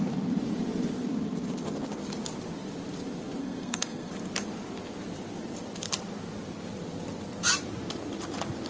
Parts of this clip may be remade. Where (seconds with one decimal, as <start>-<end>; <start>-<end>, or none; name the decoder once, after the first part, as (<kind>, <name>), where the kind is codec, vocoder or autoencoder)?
3.4-4.1 (codec, SNAC)